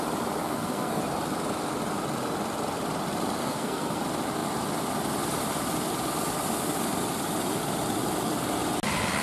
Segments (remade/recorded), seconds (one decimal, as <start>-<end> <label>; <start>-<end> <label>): 0.0-0.4 recorded; 0.4-1.0 remade; 1.0-3.4 recorded; 3.4-4.0 remade; 4.0-9.2 recorded